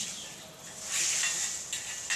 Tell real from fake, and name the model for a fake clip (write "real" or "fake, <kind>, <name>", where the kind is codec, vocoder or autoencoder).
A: real